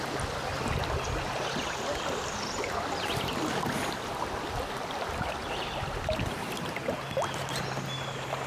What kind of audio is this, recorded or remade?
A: remade